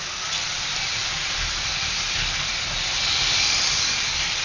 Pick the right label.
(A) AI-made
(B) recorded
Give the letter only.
A